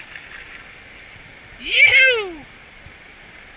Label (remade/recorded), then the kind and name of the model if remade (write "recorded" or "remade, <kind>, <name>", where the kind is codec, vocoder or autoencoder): recorded